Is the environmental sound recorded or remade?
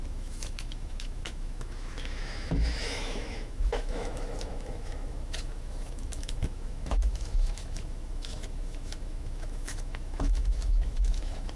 remade